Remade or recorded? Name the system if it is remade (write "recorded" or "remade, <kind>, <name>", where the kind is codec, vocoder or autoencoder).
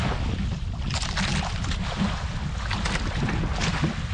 recorded